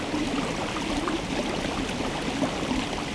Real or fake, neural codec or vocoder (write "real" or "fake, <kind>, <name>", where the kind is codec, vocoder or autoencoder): real